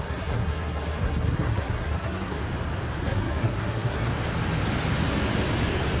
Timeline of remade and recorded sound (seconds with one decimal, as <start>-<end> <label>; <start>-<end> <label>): 0.0-2.4 remade; 2.4-3.0 recorded; 3.0-4.1 remade; 4.1-6.0 recorded